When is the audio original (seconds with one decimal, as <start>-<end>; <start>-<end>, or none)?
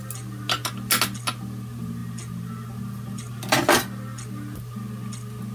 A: 0.0-5.5